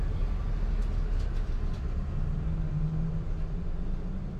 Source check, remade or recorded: recorded